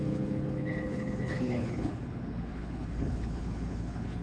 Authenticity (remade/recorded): remade